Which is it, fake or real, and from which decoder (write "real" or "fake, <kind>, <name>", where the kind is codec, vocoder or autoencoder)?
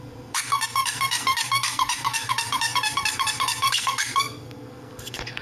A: fake, codec, SNAC